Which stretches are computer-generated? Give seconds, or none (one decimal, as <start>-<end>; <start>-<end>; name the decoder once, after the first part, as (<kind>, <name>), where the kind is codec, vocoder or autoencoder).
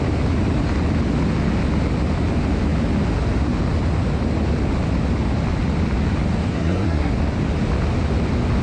6.5-7.1 (codec, SNAC)